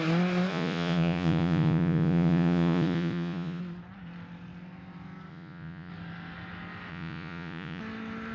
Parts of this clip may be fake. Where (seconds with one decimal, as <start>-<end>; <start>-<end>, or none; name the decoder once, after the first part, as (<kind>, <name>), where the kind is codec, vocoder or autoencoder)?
0.5-3.6 (vocoder, Vocos); 5.3-5.9; 6.9-7.8

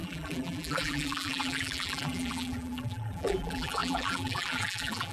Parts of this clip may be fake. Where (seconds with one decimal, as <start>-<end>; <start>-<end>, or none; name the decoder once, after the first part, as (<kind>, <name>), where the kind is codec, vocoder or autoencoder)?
0.0-5.1 (vocoder, BigVGAN v2)

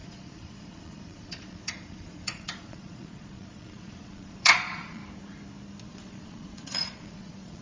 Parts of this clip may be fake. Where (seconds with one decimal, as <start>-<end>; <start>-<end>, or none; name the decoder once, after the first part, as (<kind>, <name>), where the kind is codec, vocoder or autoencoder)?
0.0-5.0 (vocoder, Vocos); 5.8-7.6